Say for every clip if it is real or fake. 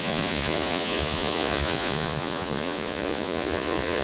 fake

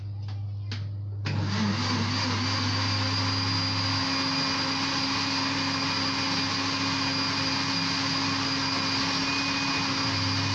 real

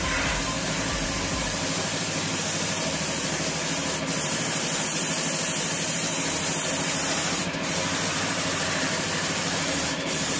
fake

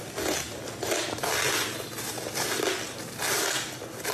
real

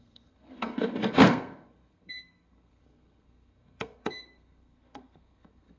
fake